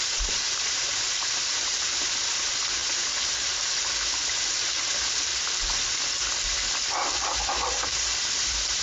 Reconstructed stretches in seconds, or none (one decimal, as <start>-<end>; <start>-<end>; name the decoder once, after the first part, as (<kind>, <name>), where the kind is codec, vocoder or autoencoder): 0.0-5.3 (vocoder, BigVGAN v2); 7.8-8.8